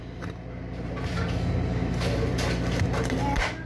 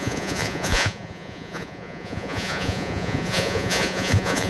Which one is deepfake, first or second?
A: second